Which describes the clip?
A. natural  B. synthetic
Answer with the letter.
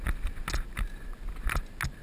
A